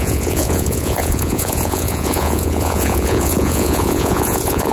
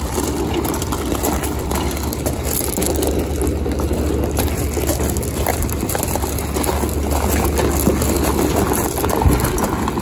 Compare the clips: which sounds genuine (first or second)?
second